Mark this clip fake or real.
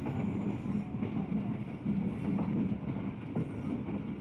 real